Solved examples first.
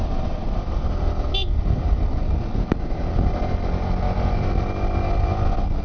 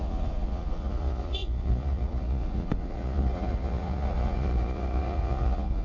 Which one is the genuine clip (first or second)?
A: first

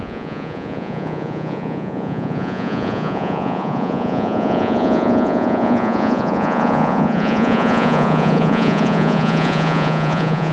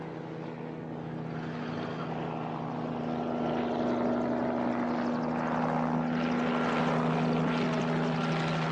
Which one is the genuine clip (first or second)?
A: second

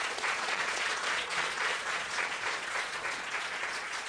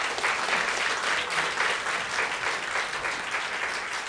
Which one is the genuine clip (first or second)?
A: second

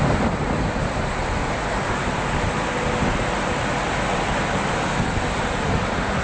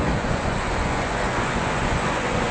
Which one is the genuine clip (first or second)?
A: first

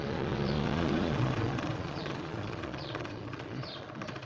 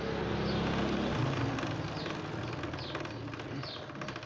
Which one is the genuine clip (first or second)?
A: second